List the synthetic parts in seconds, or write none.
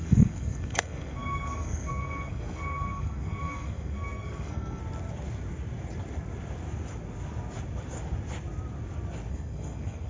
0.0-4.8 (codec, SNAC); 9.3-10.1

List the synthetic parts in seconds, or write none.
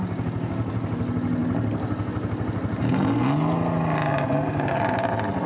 none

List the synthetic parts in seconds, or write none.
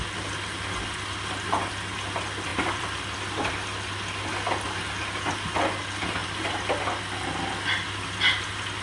2.5-3.5 (vocoder, BigVGAN v2); 6.2-7.0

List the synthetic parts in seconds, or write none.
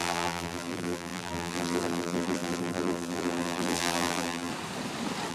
0.0-4.5 (vocoder, BigVGAN v2)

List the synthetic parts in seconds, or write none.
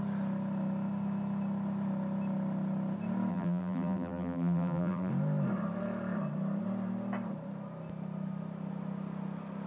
3.3-5.1 (vocoder, BigVGAN v2)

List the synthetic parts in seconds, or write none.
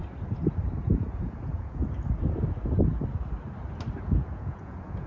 0.8-1.8 (vocoder, Vocos); 4.0-5.1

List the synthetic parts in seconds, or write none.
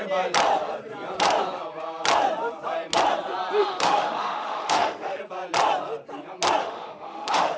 3.6-5.2 (autoencoder, DAC-VAE); 6.6-7.6